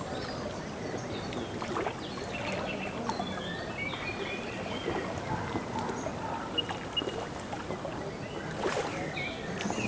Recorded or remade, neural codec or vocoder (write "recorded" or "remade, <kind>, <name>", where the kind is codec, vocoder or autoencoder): recorded